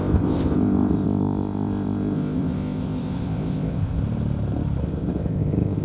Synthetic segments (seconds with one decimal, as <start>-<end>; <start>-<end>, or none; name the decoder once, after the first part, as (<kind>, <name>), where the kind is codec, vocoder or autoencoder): 0.0-4.0 (codec, ZipCodec); 4.8-5.8